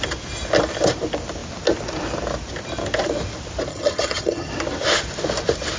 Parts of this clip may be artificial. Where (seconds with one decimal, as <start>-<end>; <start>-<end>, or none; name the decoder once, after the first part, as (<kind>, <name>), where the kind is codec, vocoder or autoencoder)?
3.7-4.5 (vocoder, HiFi-GAN)